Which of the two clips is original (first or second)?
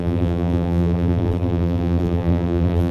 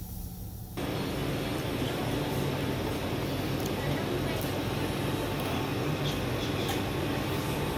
second